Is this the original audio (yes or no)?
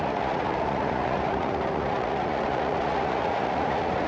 no